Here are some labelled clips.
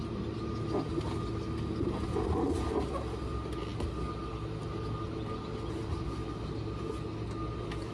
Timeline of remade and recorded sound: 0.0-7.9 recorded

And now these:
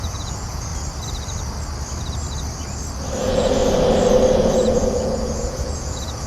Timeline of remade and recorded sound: 0.0-0.7 remade; 0.7-3.2 recorded; 3.2-3.6 remade; 3.6-4.3 recorded; 4.3-6.3 remade

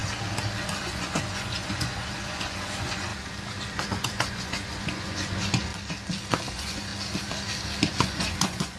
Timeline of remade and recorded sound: 0.0-0.8 recorded; 0.8-3.1 remade; 3.1-3.9 recorded; 3.9-5.7 remade; 5.7-6.5 recorded; 6.5-6.9 remade; 6.9-7.9 recorded; 7.9-8.8 remade